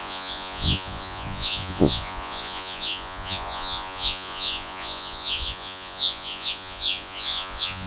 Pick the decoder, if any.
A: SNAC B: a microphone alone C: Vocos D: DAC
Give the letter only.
C